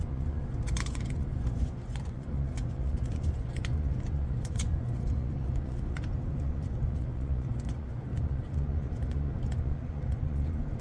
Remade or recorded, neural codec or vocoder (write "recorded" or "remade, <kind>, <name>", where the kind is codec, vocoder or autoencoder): remade, vocoder, Vocos